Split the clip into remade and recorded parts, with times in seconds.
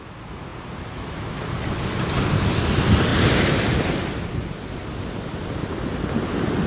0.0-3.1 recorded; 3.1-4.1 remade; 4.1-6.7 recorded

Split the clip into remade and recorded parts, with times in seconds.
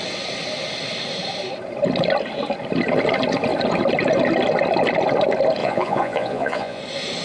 0.0-5.6 recorded; 5.6-6.8 remade; 6.8-7.2 recorded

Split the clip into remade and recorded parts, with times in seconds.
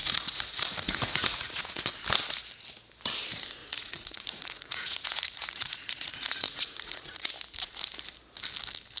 0.0-1.8 remade; 1.8-3.6 recorded; 3.6-7.3 remade; 7.3-9.0 recorded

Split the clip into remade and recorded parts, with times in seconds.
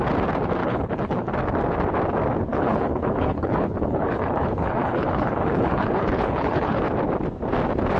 0.0-0.6 recorded; 0.6-1.3 remade; 1.3-2.5 recorded; 2.5-6.8 remade; 6.8-8.0 recorded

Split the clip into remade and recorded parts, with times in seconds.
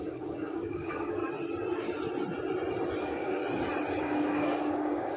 0.0-1.2 remade; 1.2-3.0 recorded; 3.0-3.4 remade; 3.4-4.0 recorded; 4.0-5.2 remade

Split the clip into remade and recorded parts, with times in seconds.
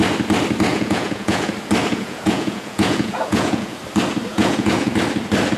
0.0-0.7 recorded; 0.7-1.5 remade; 1.5-1.9 recorded; 1.9-3.8 remade; 3.8-4.3 recorded; 4.3-4.9 remade; 4.9-5.6 recorded